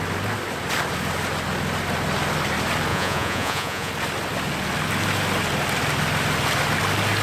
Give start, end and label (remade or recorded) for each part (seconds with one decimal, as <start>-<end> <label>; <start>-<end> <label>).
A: 0.0-2.9 recorded; 2.9-3.9 remade; 3.9-7.2 recorded